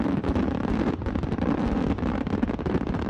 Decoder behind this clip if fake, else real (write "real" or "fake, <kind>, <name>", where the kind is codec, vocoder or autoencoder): real